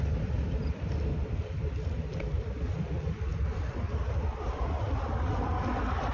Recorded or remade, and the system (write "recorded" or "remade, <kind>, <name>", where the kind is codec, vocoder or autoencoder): recorded